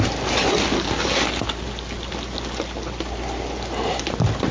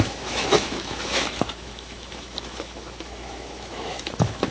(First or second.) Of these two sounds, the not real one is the second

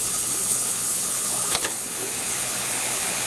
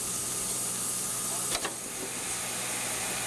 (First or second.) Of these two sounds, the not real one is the first